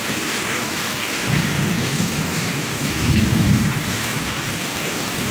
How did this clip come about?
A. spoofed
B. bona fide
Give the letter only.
A